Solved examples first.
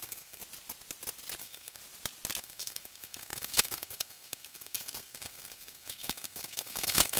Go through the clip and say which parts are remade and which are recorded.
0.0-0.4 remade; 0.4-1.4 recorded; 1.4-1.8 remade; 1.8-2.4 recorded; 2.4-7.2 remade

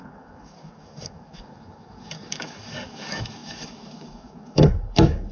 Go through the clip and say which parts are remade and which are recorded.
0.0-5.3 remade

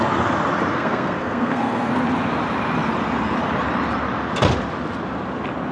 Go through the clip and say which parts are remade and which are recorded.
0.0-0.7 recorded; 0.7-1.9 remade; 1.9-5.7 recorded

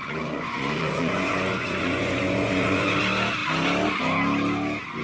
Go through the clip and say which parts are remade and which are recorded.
0.0-3.0 remade; 3.0-5.0 recorded